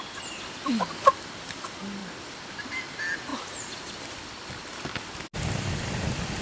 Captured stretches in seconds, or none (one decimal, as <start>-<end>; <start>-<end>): 0.0-3.3; 4.5-6.4